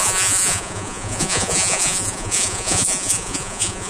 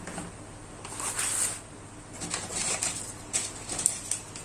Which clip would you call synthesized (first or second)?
first